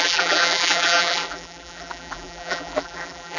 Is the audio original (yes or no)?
no